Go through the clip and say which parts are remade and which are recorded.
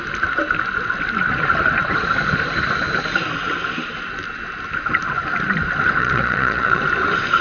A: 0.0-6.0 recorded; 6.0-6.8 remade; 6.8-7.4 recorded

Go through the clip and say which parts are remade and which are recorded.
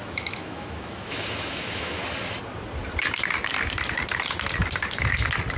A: 0.0-2.0 remade; 2.0-5.6 recorded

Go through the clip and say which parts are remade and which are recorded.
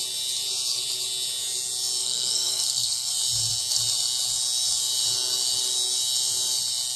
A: 0.0-2.0 recorded; 2.0-3.1 remade; 3.1-7.0 recorded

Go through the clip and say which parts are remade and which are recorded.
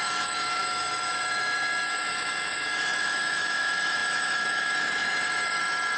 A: 0.0-6.0 remade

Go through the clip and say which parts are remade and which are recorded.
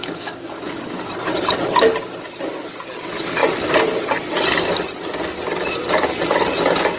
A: 0.0-1.1 remade; 1.1-7.0 recorded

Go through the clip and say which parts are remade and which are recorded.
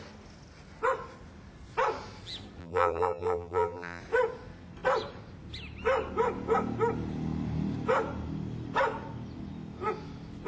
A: 0.0-2.6 recorded; 2.6-4.0 remade; 4.0-10.5 recorded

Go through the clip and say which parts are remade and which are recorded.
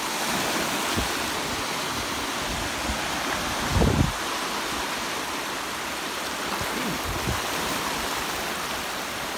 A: 0.0-9.4 recorded